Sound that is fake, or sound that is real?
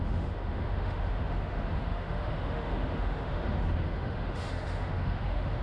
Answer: fake